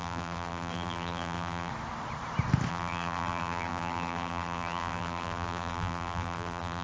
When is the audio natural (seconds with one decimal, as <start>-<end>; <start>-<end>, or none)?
1.7-2.7